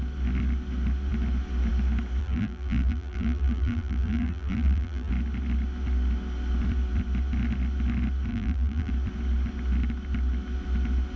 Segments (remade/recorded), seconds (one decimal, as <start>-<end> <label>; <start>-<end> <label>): 0.0-2.2 recorded; 2.2-5.1 remade; 5.1-8.3 recorded; 8.3-8.9 remade; 8.9-11.2 recorded